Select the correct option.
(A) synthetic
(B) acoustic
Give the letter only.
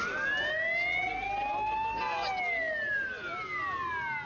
B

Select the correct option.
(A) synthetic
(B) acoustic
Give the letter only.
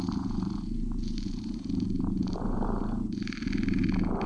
A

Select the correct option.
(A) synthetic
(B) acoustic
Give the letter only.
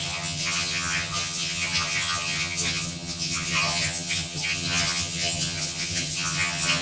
A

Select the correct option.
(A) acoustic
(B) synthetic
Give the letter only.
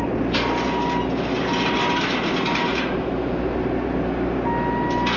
A